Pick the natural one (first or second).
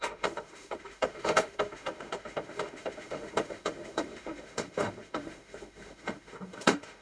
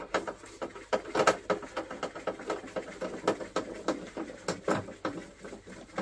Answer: second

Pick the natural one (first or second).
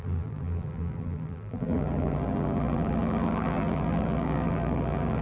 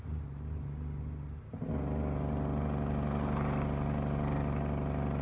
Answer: second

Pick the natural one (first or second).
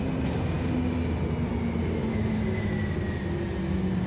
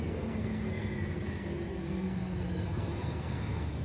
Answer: first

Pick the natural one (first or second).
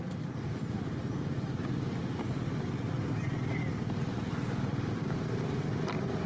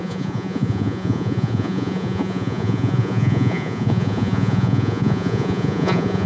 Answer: first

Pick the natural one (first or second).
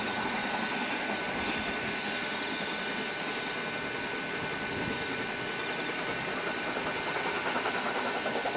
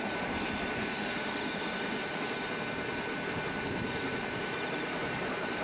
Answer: first